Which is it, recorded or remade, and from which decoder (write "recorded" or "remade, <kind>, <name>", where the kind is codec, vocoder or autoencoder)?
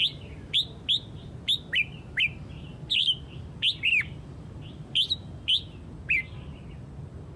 recorded